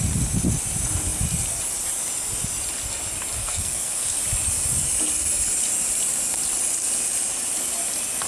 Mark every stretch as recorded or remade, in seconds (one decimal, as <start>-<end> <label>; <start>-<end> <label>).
0.0-3.4 recorded; 3.4-4.2 remade; 4.2-8.3 recorded